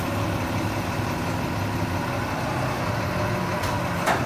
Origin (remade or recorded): recorded